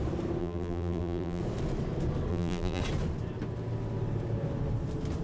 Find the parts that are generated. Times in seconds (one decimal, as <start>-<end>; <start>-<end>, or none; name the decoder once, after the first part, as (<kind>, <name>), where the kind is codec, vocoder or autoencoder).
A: 0.4-1.4 (vocoder, BigVGAN v2); 2.3-2.8